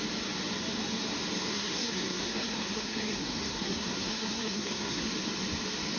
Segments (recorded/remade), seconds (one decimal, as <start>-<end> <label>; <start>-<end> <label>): 0.0-1.5 recorded; 1.5-5.1 remade; 5.1-6.0 recorded